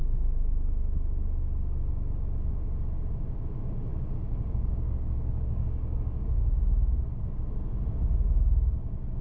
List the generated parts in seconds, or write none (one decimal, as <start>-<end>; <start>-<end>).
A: 3.9-6.6